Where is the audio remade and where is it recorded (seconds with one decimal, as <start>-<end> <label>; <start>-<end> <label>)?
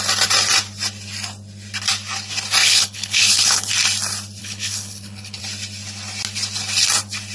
0.0-2.6 recorded; 2.6-3.7 remade; 3.7-4.4 recorded; 4.4-5.4 remade; 5.4-7.3 recorded